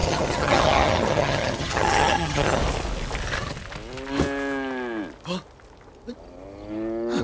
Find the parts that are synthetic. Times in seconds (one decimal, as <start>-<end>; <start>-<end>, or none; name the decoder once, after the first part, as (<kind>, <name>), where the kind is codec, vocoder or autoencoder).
0.0-2.6 (vocoder, HiFi-GAN)